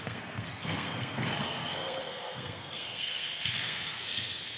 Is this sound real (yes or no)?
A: no